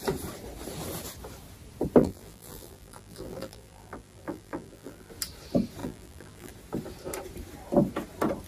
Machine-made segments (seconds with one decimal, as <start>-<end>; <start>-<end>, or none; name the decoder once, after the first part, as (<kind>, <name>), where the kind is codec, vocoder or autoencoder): 2.0-5.1 (vocoder, BigVGAN v2); 5.8-6.5

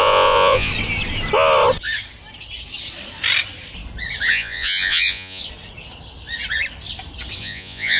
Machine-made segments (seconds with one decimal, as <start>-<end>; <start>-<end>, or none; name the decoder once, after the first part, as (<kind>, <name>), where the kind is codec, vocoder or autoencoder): 0.0-0.7 (vocoder, Vocos); 4.3-5.4; 7.4-8.0

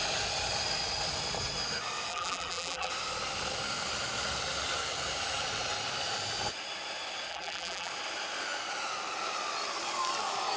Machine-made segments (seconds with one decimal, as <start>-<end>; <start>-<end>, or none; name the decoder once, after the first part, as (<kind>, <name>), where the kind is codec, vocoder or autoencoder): 2.1-2.9 (vocoder, BigVGAN v2); 7.3-7.9

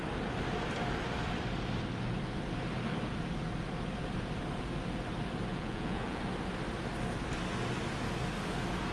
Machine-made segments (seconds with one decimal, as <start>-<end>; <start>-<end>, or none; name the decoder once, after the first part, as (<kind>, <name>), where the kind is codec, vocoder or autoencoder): 5.5-6.2 (vocoder, Vocos)

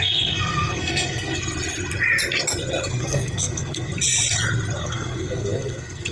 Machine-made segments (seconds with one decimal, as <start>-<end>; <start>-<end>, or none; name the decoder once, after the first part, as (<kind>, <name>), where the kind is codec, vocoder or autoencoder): 0.0-1.4 (codec, SNAC); 2.9-3.9; 4.8-6.1